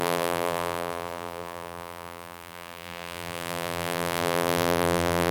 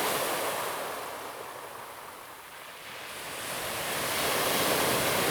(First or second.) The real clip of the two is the second